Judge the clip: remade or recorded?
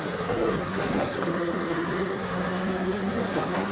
remade